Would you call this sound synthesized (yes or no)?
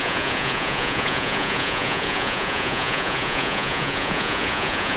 yes